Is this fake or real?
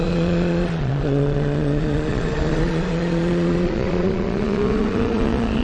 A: fake